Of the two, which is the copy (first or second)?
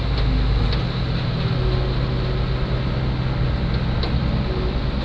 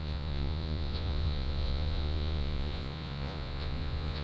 second